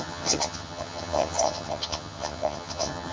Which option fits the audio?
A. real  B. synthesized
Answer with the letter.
B